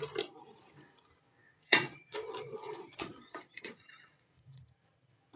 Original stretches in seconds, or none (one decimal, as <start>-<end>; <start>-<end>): 0.0-1.4; 4.6-5.4